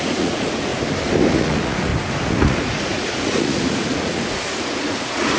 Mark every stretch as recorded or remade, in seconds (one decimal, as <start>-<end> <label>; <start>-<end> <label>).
0.0-0.7 remade; 0.7-1.3 recorded; 1.3-1.9 remade; 1.9-2.4 recorded; 2.4-5.4 remade